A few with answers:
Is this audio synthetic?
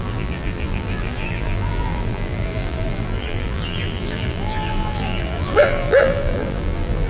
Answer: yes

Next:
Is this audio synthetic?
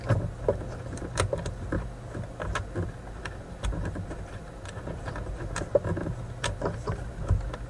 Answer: no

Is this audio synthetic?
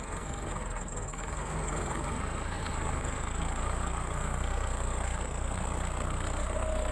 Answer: yes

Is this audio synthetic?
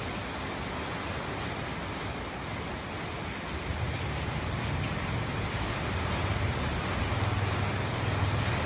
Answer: no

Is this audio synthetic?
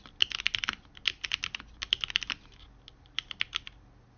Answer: no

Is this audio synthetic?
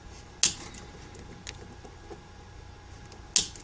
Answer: no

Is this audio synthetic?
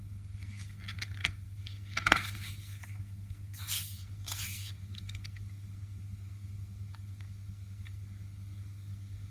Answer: yes